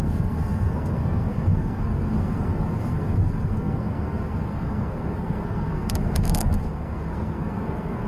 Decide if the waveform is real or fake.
fake